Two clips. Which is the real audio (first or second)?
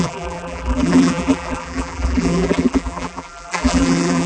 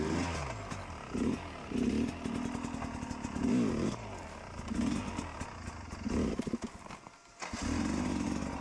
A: second